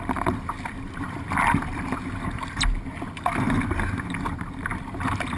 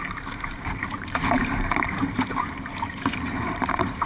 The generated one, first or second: second